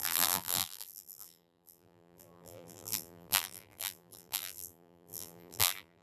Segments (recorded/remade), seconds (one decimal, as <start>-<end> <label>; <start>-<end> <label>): 0.0-6.0 remade